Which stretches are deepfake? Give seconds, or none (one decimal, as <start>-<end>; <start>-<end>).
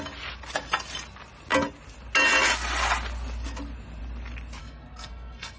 4.6-5.6